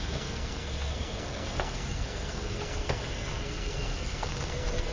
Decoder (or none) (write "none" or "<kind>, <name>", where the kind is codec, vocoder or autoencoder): codec, SNAC